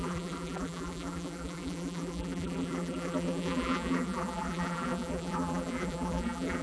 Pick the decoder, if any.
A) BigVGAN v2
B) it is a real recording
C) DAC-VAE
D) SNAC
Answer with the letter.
A